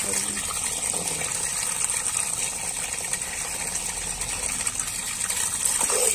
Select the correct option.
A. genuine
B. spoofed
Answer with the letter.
A